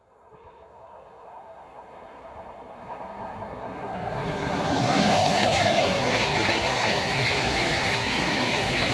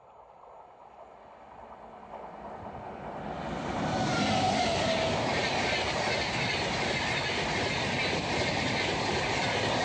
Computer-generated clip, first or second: first